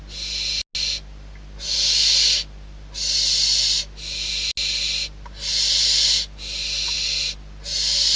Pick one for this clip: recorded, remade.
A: recorded